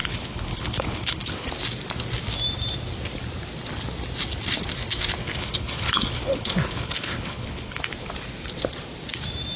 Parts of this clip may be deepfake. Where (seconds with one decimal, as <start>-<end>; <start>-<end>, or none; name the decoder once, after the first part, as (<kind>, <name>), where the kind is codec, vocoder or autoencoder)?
0.0-1.5 (codec, HILCodec); 5.2-7.8

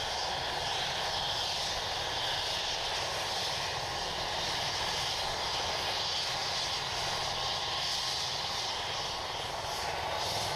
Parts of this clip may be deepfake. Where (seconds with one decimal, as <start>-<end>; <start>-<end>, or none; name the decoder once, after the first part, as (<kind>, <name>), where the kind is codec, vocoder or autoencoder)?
none

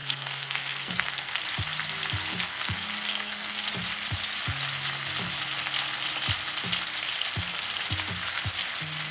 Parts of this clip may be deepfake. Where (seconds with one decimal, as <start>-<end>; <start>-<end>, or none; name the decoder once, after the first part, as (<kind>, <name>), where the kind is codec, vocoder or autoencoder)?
0.0-1.4 (codec, SNAC); 2.3-3.7